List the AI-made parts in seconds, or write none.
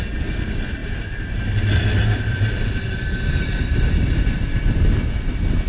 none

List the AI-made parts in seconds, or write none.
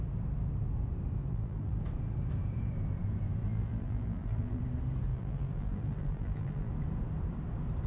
1.2-1.8 (vocoder, BigVGAN v2); 3.4-4.6; 5.1-6.7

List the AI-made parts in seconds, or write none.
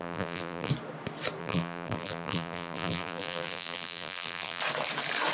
0.0-0.7 (vocoder, BigVGAN v2); 1.4-4.6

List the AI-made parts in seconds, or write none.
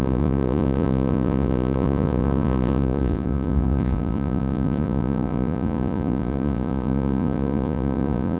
0.0-8.4 (vocoder, Vocos)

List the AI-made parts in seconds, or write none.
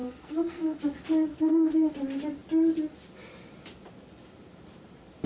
0.0-0.8 (codec, SNAC); 1.3-1.9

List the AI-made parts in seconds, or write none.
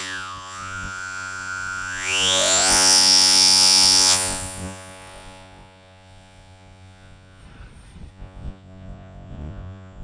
0.0-7.4 (vocoder, Vocos); 8.1-10.0